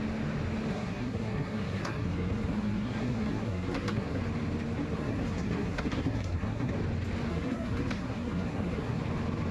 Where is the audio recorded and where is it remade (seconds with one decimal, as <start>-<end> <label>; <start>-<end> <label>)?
0.0-0.7 recorded; 0.7-4.2 remade; 4.2-4.9 recorded; 4.9-6.7 remade; 6.7-7.3 recorded; 7.3-9.0 remade; 9.0-9.5 recorded